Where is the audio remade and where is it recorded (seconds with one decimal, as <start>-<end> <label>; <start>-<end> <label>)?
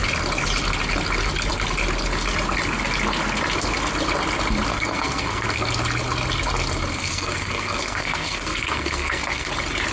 0.0-4.7 recorded; 4.7-5.6 remade; 5.6-6.9 recorded; 6.9-9.5 remade; 9.5-9.9 recorded